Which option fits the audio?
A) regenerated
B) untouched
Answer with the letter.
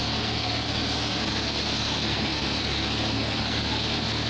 A